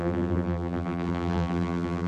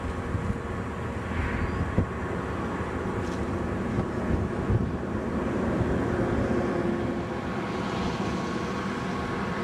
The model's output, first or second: first